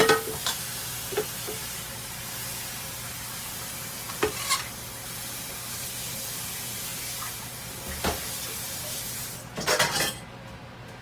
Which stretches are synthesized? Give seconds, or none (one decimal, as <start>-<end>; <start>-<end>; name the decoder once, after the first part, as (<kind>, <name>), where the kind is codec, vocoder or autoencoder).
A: none